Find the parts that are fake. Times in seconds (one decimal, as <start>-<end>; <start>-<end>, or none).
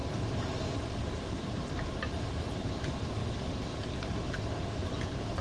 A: none